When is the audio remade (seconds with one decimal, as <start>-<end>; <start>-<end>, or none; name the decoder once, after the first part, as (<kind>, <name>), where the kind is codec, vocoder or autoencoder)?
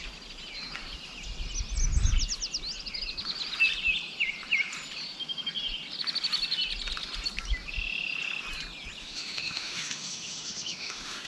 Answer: 9.0-11.3 (autoencoder, DAC-VAE)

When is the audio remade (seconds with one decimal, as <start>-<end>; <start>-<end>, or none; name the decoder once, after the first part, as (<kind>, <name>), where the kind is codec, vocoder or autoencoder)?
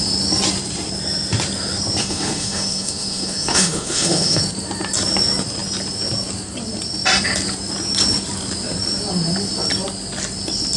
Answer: 2.0-4.4 (autoencoder, DAC-VAE)